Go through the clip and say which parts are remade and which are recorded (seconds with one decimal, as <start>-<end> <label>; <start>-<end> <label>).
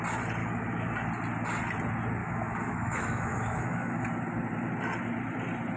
0.0-0.4 recorded; 0.4-0.9 remade; 0.9-2.2 recorded; 2.2-4.0 remade; 4.0-5.8 recorded